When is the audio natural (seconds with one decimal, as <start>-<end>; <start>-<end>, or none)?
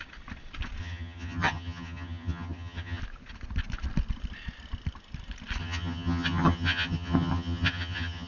0.0-0.8; 3.0-5.6